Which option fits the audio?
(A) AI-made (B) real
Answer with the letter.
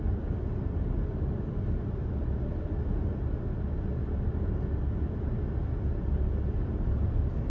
B